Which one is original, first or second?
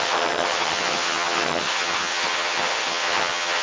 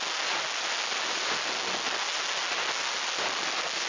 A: second